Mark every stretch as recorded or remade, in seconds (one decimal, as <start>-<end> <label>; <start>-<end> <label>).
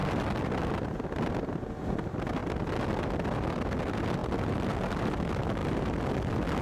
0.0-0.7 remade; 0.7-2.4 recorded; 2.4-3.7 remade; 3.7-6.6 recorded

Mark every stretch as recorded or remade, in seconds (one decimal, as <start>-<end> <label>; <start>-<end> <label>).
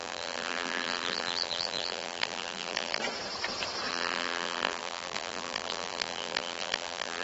0.0-3.0 remade; 3.0-3.9 recorded; 3.9-7.2 remade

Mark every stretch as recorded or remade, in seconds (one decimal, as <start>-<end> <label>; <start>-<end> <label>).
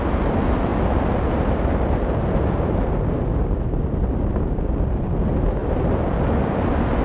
0.0-5.6 recorded; 5.6-7.0 remade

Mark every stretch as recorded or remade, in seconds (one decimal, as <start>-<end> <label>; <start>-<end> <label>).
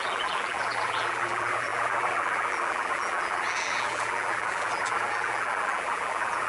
0.0-6.5 remade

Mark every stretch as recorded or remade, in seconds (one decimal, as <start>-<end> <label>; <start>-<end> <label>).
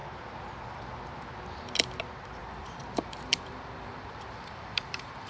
0.0-2.4 recorded; 2.4-5.3 remade